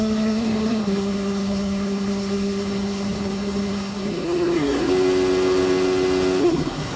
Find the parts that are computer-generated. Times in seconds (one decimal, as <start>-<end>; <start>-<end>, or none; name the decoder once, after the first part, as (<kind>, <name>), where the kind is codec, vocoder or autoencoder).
0.0-4.9 (codec, SNAC); 6.4-7.0